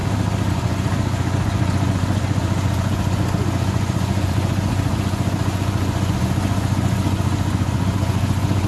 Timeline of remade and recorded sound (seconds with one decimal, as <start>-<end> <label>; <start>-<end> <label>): 0.0-0.5 recorded; 0.5-8.7 remade